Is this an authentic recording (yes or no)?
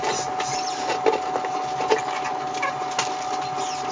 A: yes